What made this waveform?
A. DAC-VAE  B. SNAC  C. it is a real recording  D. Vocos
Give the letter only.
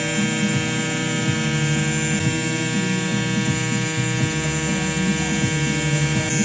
C